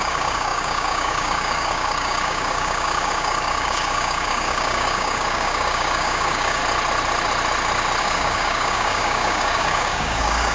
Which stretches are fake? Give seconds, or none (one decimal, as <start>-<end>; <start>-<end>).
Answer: 0.0-6.6; 8.0-10.5